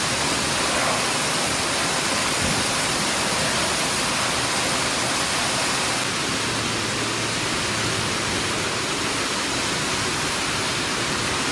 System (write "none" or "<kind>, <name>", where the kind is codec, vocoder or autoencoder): none